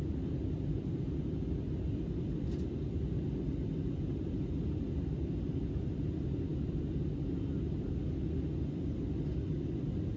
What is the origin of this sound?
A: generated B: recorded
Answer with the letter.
B